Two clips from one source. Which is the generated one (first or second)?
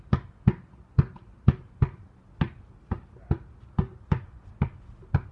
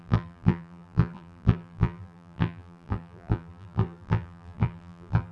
second